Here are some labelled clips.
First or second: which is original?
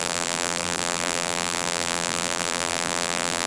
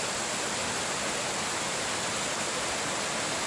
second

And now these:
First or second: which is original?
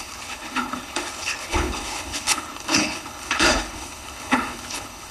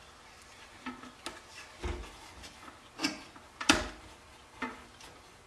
second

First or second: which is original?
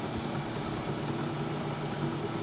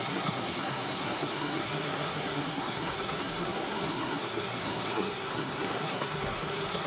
first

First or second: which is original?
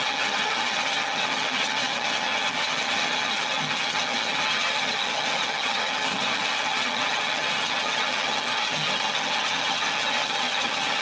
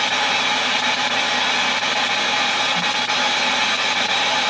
second